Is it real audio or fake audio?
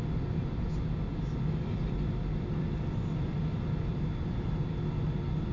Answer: real